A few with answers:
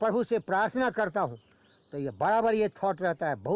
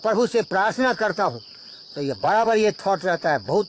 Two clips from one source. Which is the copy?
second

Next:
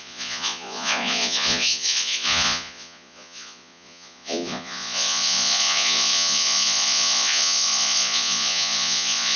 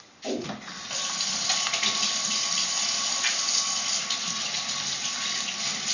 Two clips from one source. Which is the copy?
first